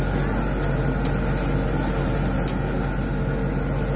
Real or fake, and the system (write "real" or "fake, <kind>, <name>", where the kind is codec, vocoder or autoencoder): real